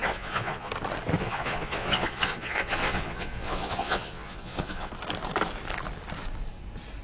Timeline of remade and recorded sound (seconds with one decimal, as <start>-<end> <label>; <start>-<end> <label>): 0.0-0.7 remade; 0.7-1.2 recorded; 1.2-4.9 remade; 4.9-7.0 recorded